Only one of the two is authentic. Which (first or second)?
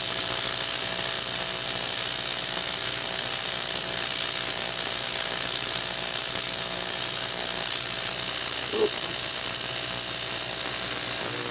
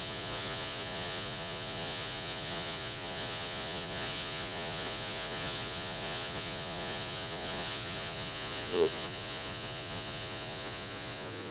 first